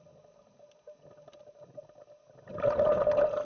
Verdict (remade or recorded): recorded